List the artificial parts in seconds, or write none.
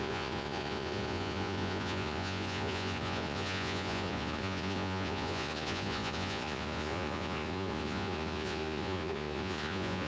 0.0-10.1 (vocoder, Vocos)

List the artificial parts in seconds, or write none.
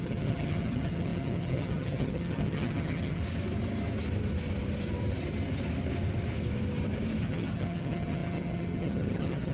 0.0-3.2 (vocoder, HiFi-GAN); 7.2-9.5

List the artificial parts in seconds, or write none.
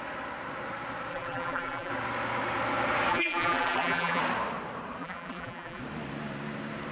1.1-1.9 (vocoder, BigVGAN v2); 3.1-4.2; 5.0-5.8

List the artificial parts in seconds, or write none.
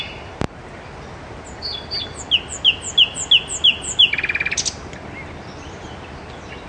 none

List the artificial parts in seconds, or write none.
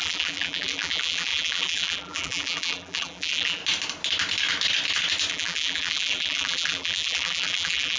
0.0-3.6 (vocoder, BigVGAN v2); 5.3-8.0